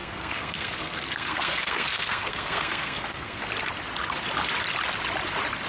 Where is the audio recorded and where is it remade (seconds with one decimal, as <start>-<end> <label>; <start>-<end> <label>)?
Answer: 0.0-3.4 remade; 3.4-5.7 recorded